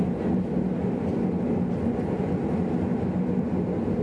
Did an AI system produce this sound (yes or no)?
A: no